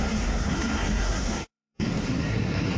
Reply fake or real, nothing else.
fake